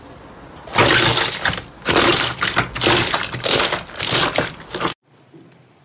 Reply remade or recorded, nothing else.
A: recorded